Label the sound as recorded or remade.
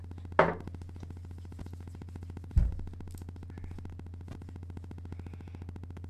recorded